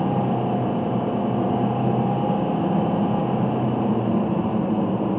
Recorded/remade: recorded